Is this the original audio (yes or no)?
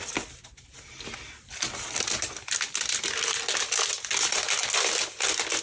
yes